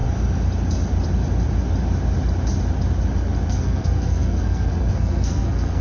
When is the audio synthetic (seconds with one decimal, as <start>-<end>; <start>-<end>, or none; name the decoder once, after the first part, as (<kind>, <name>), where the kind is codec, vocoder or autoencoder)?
3.5-5.8 (codec, SNAC)